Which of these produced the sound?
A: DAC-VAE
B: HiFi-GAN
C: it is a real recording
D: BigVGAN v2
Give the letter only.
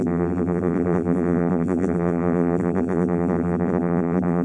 D